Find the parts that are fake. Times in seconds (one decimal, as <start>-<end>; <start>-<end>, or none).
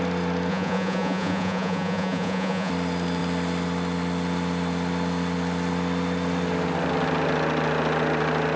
0.5-2.7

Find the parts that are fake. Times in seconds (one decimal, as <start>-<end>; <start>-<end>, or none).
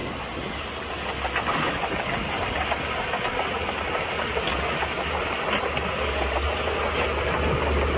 none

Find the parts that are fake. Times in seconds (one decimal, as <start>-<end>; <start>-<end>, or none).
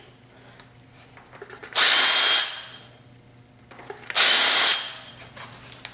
none